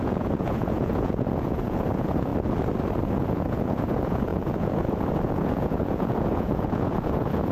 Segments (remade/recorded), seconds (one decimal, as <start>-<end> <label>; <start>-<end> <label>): 0.0-2.3 remade; 2.3-3.0 recorded; 3.0-7.5 remade